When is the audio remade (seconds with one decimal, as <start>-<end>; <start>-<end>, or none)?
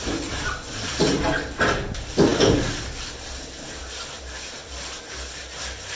none